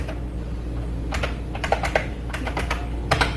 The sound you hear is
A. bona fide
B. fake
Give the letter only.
B